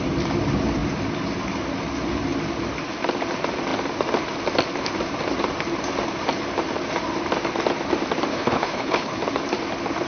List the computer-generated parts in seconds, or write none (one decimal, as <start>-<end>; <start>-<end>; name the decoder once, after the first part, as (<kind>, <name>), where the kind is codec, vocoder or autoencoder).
8.3-9.2 (codec, HILCodec)

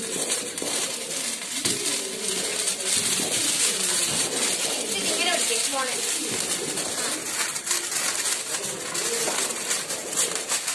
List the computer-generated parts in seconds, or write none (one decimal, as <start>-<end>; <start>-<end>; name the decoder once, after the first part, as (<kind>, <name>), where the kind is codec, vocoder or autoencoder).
none

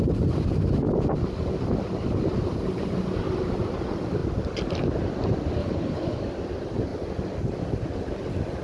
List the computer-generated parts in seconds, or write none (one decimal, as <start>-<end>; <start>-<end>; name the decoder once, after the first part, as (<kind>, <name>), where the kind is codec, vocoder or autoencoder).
5.6-6.2 (codec, HILCodec)

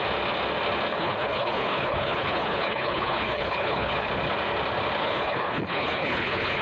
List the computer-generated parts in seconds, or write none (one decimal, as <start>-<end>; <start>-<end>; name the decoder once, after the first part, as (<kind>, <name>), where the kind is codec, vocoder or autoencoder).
0.9-4.1 (codec, HILCodec); 5.0-6.6

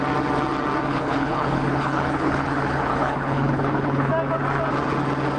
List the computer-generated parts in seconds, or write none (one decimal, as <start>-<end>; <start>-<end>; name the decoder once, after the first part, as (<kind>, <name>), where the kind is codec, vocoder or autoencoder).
0.9-4.1 (codec, HILCodec)